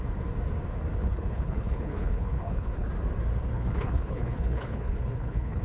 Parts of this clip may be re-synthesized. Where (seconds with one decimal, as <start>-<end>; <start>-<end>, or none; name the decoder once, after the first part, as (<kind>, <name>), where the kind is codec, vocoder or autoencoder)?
1.0-2.9 (codec, HILCodec); 3.4-5.6